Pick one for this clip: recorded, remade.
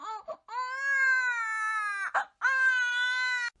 recorded